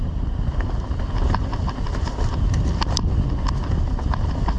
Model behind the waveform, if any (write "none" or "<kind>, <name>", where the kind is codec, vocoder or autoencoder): none